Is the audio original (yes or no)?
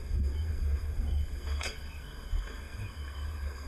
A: no